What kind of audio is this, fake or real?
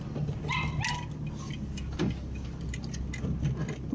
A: real